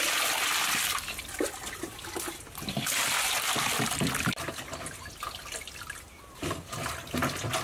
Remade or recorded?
recorded